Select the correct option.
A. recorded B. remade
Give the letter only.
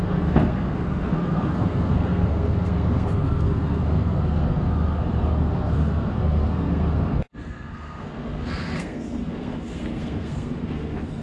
B